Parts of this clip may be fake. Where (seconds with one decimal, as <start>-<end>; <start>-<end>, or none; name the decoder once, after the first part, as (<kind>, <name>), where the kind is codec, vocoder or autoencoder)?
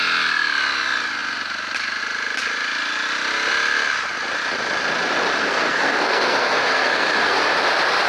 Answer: 5.4-7.4 (codec, SNAC)